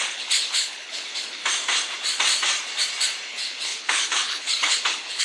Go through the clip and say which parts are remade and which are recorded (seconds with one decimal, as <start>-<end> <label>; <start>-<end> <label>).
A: 0.0-1.4 remade; 1.4-3.3 recorded; 3.3-5.2 remade